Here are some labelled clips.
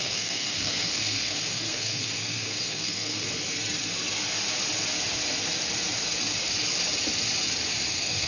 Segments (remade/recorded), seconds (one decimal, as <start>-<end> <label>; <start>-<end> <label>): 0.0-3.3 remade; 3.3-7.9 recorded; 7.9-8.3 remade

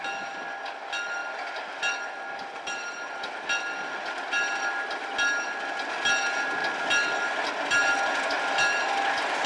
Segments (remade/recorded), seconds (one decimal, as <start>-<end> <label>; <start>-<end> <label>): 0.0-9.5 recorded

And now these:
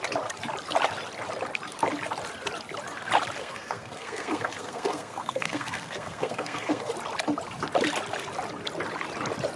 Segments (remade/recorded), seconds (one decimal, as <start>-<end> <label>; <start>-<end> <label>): 0.0-3.4 recorded; 3.4-6.9 remade; 6.9-9.6 recorded

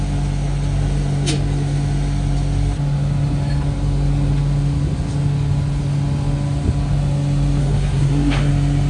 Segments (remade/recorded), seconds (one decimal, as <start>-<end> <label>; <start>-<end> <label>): 0.0-7.6 recorded; 7.6-8.5 remade; 8.5-8.9 recorded

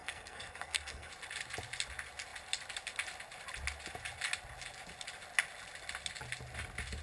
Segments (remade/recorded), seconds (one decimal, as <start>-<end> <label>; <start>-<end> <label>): 0.0-1.1 remade; 1.1-7.0 recorded